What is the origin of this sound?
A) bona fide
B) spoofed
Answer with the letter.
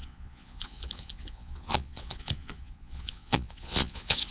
B